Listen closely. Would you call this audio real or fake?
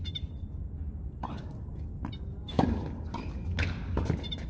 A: real